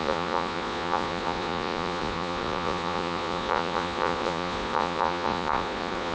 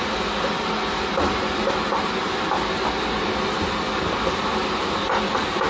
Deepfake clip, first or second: first